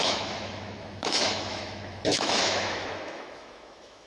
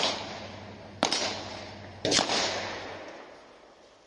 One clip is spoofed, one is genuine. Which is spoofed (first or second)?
first